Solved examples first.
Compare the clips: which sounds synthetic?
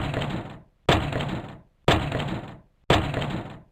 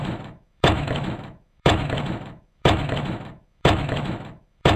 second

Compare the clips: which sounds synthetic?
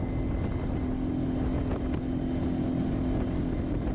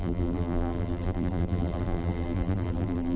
second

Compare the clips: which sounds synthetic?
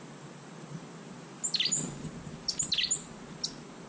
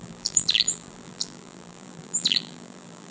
second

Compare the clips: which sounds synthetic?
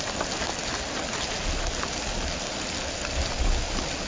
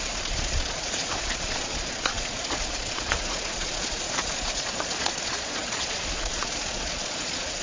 second